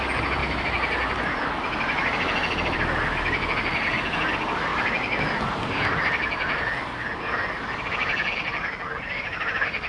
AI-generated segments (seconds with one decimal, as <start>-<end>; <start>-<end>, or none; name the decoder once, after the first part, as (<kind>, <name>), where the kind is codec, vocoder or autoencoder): none